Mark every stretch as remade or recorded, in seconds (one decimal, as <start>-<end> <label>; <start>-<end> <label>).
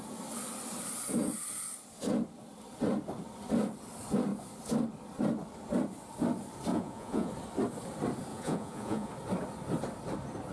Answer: 0.0-6.7 recorded; 6.7-7.3 remade; 7.3-8.3 recorded; 8.3-9.1 remade; 9.1-10.5 recorded